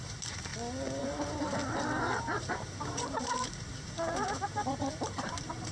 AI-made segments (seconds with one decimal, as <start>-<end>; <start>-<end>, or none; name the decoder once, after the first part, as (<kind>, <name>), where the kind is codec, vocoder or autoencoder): 0.0-0.5 (vocoder, BigVGAN v2); 1.0-1.6; 2.2-5.7